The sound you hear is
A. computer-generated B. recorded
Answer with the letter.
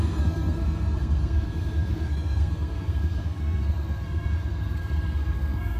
A